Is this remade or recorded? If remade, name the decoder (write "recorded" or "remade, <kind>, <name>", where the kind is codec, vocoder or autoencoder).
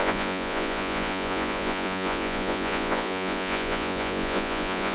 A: remade, vocoder, Vocos